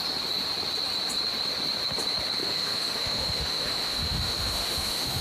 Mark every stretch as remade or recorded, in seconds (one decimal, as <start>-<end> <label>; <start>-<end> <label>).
0.0-2.4 recorded; 2.4-5.2 remade